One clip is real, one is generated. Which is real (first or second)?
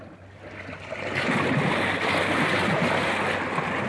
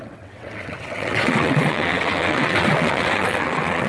first